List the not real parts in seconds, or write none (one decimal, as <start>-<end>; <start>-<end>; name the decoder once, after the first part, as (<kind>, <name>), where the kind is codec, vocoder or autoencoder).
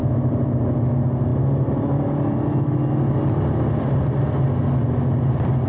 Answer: none